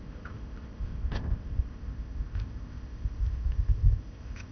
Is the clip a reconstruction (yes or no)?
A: yes